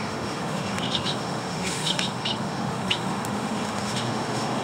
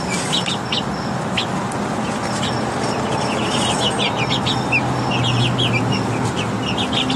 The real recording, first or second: second